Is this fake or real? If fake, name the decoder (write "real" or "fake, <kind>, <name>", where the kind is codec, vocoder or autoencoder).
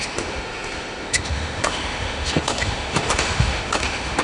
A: fake, autoencoder, DAC-VAE